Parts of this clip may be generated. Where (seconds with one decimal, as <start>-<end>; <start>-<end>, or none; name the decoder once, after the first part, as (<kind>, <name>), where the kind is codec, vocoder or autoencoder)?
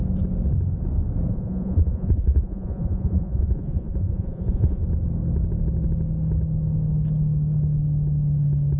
1.3-4.8 (vocoder, Vocos)